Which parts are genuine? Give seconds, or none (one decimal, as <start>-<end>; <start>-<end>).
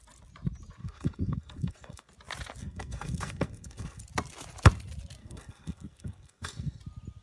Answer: 0.0-0.8; 2.1-2.6; 4.0-5.2; 6.8-7.2